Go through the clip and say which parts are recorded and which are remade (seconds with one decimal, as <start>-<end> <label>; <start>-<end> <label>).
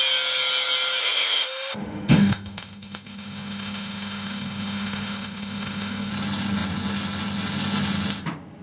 0.0-1.0 recorded; 1.0-6.1 remade; 6.1-8.6 recorded